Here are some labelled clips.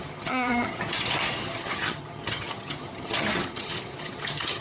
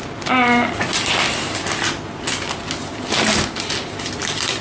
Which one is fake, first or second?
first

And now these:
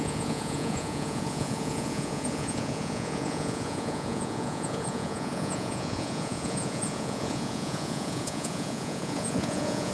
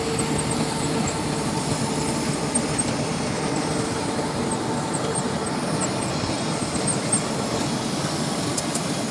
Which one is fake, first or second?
first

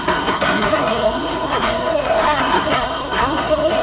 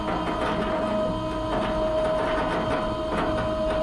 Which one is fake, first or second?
first